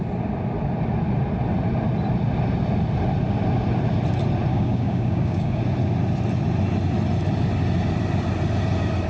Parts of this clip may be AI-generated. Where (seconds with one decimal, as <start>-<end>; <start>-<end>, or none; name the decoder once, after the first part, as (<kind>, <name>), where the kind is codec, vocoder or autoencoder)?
4.5-5.6 (codec, DAC)